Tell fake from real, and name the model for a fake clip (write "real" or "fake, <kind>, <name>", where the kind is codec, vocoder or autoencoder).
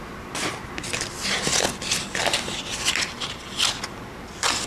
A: real